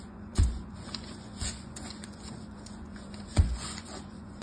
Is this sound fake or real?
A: fake